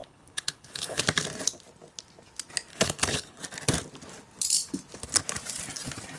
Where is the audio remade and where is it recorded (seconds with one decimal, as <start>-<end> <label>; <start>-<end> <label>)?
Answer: 0.0-1.0 remade; 1.0-2.7 recorded; 2.7-3.4 remade; 3.4-6.2 recorded